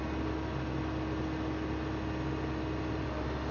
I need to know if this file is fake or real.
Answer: real